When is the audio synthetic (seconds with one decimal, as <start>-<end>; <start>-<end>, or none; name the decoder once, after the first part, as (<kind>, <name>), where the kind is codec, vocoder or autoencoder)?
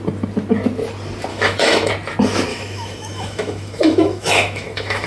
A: 1.3-1.9 (autoencoder, DAC-VAE); 2.5-5.1